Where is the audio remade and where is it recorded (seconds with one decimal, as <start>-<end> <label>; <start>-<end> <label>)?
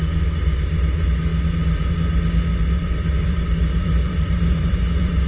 0.0-2.5 recorded; 2.5-5.3 remade